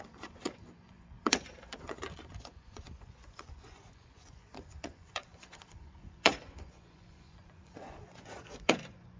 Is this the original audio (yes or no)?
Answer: no